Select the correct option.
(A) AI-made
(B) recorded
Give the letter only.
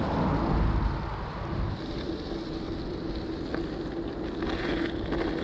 B